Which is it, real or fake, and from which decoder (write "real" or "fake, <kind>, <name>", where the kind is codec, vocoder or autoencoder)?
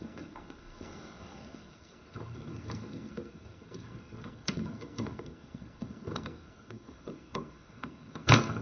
fake, codec, SNAC